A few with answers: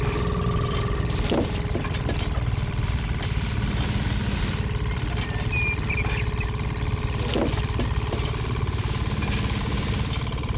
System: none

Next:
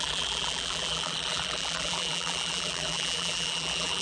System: vocoder, BigVGAN v2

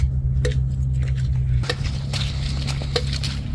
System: none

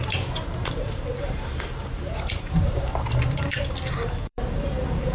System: vocoder, BigVGAN v2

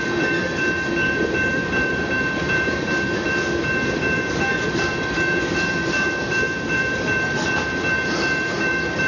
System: vocoder, BigVGAN v2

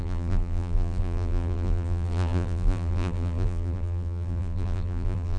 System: vocoder, BigVGAN v2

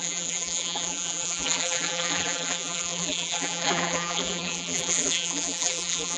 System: vocoder, BigVGAN v2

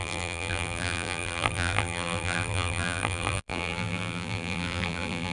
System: vocoder, BigVGAN v2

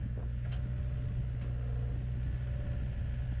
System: none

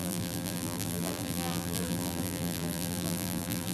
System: vocoder, BigVGAN v2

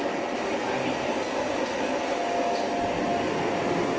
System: none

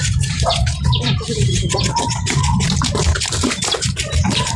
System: vocoder, BigVGAN v2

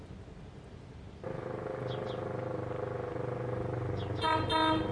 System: none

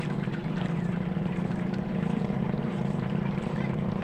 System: vocoder, BigVGAN v2